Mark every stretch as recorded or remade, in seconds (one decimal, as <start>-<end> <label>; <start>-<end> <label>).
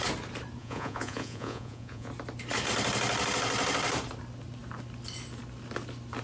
0.0-0.6 recorded; 0.6-2.1 remade; 2.1-6.2 recorded